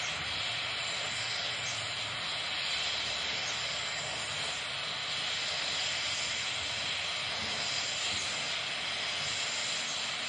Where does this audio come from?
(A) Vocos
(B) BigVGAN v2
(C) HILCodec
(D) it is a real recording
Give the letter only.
D